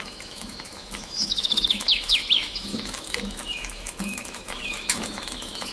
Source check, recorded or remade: remade